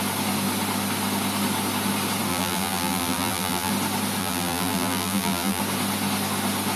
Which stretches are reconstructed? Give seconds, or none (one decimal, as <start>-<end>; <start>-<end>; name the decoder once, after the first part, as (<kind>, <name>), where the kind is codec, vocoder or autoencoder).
2.3-3.7 (vocoder, BigVGAN v2); 4.2-5.6